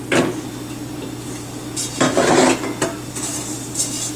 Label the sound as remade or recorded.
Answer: recorded